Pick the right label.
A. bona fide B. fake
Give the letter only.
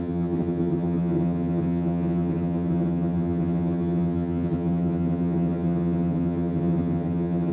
B